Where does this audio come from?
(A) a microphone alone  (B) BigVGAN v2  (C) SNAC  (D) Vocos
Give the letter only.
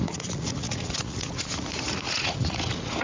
D